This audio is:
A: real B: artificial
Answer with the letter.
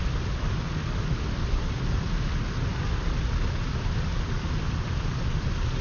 A